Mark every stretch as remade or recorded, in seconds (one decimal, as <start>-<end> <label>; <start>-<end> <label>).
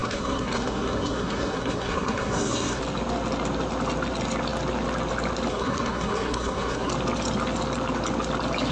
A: 0.0-2.8 remade; 2.8-5.5 recorded; 5.5-6.9 remade; 6.9-8.7 recorded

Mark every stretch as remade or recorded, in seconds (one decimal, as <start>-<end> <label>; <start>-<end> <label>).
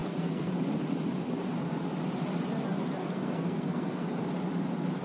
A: 0.0-0.5 remade; 0.5-3.0 recorded; 3.0-4.2 remade; 4.2-5.0 recorded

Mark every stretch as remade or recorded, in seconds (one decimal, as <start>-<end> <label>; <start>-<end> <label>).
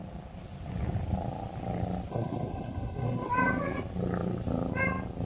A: 0.0-2.1 recorded; 2.1-3.3 remade; 3.3-5.3 recorded